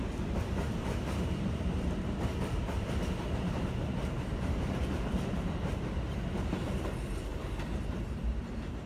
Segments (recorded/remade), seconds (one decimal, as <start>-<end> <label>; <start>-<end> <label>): 0.0-8.9 remade

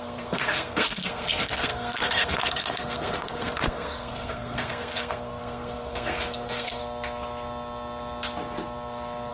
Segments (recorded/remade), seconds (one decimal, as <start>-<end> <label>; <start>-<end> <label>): 0.0-6.8 remade; 6.8-9.3 recorded

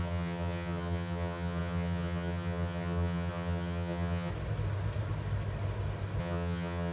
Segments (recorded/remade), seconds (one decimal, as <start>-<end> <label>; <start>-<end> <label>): 0.0-4.3 remade; 4.3-6.2 recorded; 6.2-6.9 remade

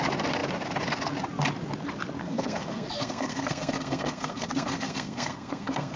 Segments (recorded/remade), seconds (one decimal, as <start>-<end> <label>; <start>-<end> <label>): 0.0-2.2 recorded; 2.2-6.0 remade

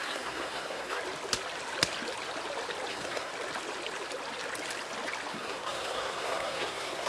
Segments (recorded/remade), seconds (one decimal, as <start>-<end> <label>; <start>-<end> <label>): 0.0-1.0 remade; 1.0-2.9 recorded; 2.9-3.3 remade; 3.3-5.3 recorded; 5.3-7.1 remade

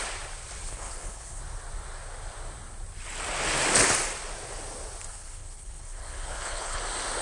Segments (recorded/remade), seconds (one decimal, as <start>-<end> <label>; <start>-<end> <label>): 0.0-0.6 recorded; 0.6-1.4 remade; 1.4-5.1 recorded; 5.1-6.8 remade; 6.8-7.2 recorded